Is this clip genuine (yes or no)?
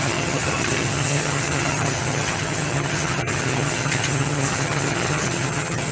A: no